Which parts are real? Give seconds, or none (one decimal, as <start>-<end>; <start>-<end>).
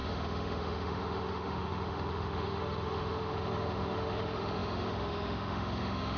none